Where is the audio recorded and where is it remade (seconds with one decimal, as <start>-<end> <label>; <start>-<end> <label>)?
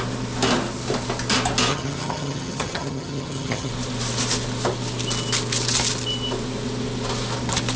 0.0-1.7 recorded; 1.7-3.7 remade; 3.7-7.8 recorded